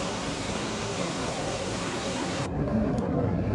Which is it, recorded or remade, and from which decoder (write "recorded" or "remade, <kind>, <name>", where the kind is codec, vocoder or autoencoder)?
remade, codec, SNAC